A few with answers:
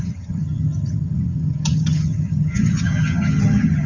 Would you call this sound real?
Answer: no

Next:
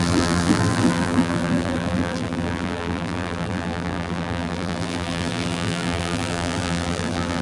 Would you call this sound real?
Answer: no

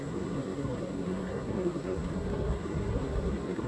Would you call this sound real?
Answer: no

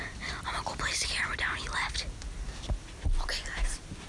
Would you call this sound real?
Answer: yes